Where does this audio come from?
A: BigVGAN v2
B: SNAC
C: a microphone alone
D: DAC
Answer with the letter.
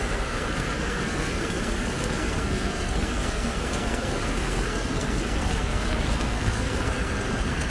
B